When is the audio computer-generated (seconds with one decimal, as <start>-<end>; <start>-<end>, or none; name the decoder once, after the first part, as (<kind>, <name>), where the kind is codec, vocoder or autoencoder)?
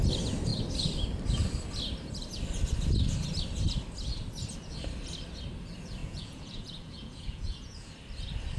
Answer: 6.0-7.9 (vocoder, Vocos)